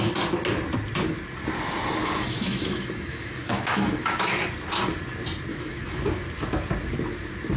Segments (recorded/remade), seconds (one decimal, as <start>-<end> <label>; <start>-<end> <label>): 0.0-2.0 recorded; 2.0-4.4 remade; 4.4-5.5 recorded; 5.5-6.0 remade; 6.0-7.6 recorded